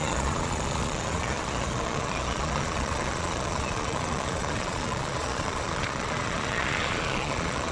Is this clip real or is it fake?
fake